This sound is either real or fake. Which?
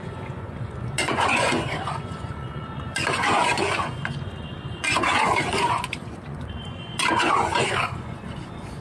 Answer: fake